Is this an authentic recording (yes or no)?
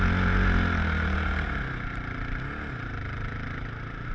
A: yes